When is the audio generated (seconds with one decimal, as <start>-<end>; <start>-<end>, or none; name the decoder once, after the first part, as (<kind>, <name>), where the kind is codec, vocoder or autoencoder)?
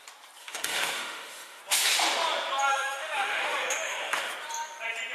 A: 0.4-1.6 (autoencoder, DAC-VAE); 2.7-4.3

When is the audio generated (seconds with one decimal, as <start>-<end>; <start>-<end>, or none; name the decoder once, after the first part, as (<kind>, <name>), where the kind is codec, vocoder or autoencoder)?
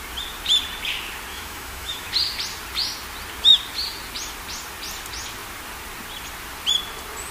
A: 1.3-2.1 (autoencoder, DAC-VAE)